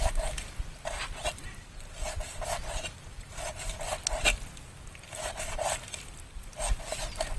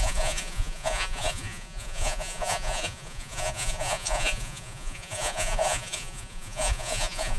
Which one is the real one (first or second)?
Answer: first